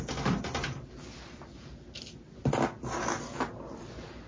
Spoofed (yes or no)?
no